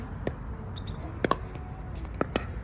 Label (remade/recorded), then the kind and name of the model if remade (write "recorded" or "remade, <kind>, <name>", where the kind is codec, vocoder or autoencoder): recorded